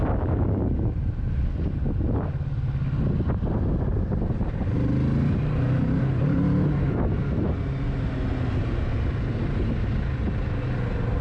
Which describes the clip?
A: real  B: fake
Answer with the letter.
A